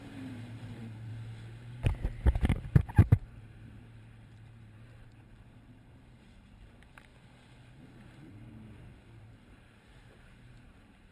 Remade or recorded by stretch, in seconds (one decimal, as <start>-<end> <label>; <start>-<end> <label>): 0.0-1.1 remade; 1.1-2.5 recorded; 2.5-7.1 remade; 7.1-9.2 recorded; 9.2-11.1 remade